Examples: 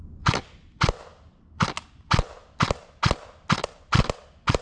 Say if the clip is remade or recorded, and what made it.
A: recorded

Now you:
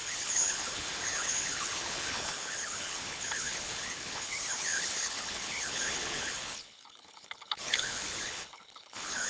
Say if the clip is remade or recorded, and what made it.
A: remade, codec, HILCodec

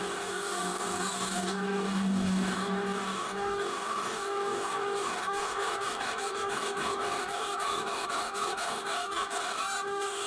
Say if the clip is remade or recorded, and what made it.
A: remade, codec, DAC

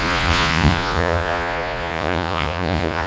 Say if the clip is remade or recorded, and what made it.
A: remade, vocoder, Vocos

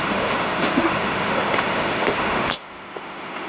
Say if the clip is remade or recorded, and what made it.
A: remade, autoencoder, DAC-VAE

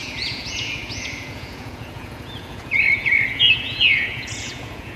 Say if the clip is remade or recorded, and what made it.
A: remade, vocoder, Vocos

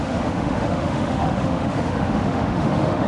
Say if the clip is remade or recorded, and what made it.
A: remade, autoencoder, DAC-VAE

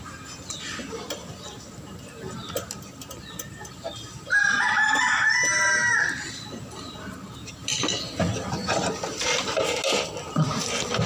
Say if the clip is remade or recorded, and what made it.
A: recorded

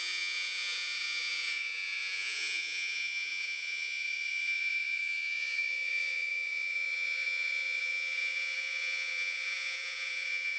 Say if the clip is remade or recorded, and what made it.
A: remade, vocoder, Vocos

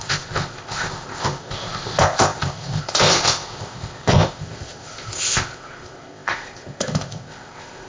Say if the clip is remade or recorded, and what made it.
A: remade, codec, ZipCodec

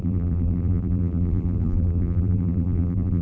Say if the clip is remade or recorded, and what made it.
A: remade, vocoder, BigVGAN v2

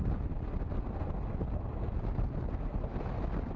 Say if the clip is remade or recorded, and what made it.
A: recorded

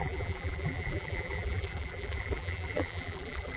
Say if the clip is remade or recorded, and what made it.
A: remade, vocoder, BigVGAN v2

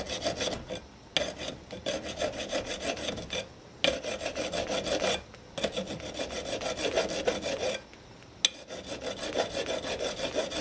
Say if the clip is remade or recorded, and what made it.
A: recorded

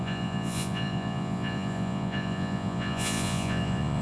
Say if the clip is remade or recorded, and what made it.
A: remade, vocoder, Vocos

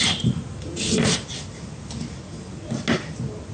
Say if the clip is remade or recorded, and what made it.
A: recorded